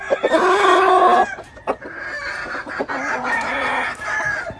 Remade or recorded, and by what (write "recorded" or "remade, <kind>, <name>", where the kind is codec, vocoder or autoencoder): recorded